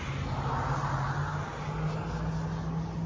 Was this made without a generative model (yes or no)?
yes